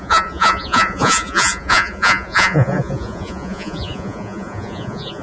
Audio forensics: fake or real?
fake